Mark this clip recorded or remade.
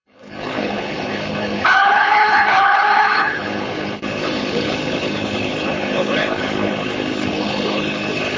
remade